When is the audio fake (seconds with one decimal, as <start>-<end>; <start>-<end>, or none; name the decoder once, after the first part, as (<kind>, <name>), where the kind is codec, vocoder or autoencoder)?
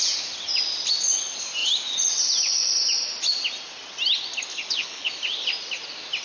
4.5-5.1 (codec, HILCodec)